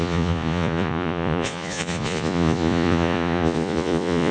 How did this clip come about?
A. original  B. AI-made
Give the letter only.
B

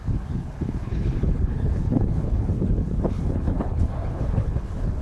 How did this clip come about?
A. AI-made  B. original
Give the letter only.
A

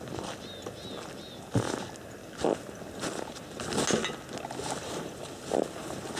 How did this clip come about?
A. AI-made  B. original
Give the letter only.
B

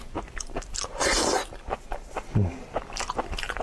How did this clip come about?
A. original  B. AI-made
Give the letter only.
A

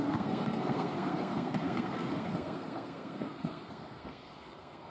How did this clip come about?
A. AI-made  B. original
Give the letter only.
A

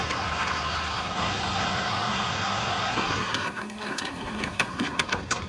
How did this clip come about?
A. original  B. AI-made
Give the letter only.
B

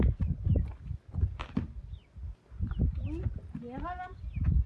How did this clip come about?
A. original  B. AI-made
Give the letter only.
A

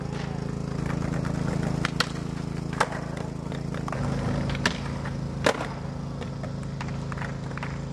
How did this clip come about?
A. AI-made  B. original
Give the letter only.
B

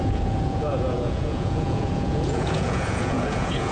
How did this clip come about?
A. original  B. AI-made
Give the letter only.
B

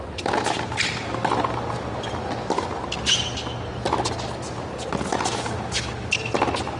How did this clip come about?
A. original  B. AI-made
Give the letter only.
A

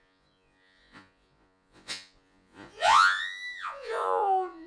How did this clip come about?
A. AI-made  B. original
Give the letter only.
A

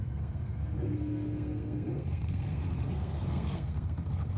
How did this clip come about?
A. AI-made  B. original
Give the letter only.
A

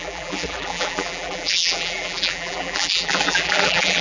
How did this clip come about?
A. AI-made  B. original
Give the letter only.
A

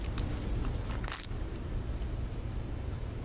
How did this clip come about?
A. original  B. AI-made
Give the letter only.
A